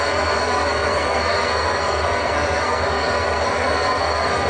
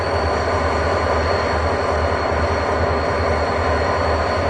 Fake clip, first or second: first